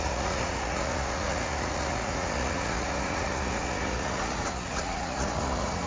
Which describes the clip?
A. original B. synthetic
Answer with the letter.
B